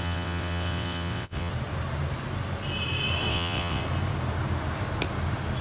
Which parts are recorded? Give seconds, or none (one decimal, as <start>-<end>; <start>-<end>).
1.5-3.3; 3.8-5.6